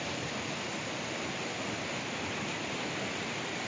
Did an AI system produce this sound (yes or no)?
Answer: no